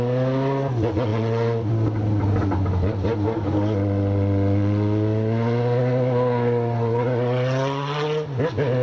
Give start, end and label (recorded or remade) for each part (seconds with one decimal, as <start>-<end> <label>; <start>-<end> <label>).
0.0-8.8 recorded